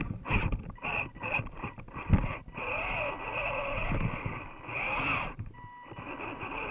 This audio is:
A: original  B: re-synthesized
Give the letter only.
A